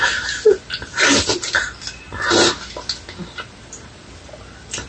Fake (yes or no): no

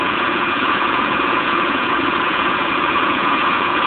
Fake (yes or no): yes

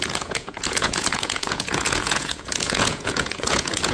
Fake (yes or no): yes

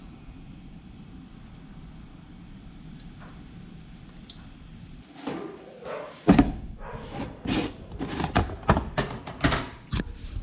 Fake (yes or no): no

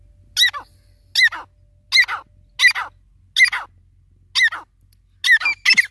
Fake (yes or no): no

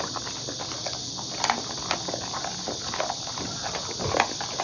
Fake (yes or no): no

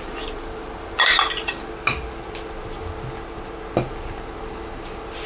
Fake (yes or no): no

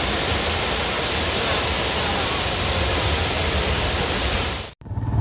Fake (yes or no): no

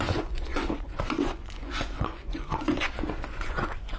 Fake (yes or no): yes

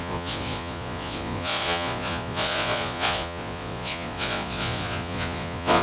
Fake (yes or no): yes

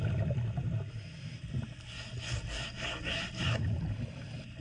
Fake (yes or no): no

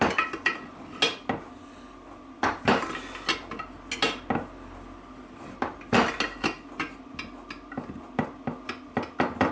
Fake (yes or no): no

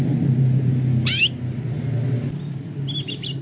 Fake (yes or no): no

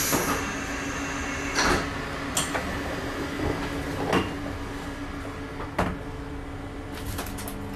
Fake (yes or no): no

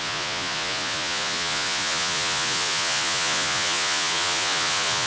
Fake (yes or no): yes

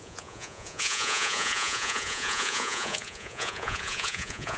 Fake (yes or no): yes